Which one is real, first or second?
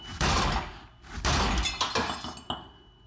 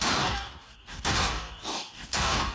first